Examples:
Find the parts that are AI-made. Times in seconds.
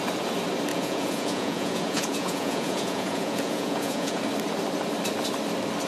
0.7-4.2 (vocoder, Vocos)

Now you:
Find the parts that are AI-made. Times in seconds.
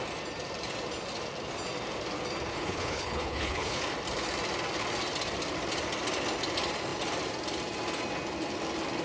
2.5-3.8 (codec, HILCodec)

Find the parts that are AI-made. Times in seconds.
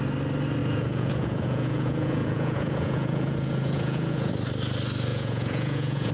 0.6-4.3 (vocoder, Vocos); 5.1-6.1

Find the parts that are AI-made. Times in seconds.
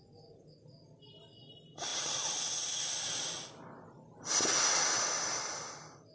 none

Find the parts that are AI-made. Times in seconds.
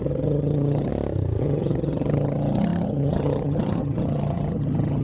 0.0-0.9 (vocoder, HiFi-GAN); 1.4-5.0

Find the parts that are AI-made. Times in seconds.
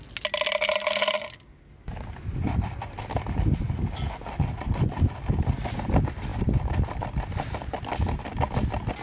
none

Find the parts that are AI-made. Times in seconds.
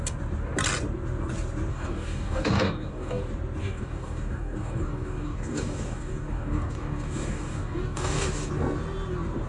1.7-3.2 (codec, DAC); 3.6-8.5